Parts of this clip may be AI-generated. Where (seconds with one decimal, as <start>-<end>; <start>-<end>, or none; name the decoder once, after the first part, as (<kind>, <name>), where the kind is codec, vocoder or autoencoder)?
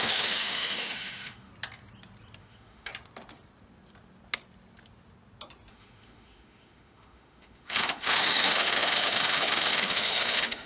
0.0-1.5 (autoencoder, DAC-VAE); 2.4-2.9; 5.7-10.7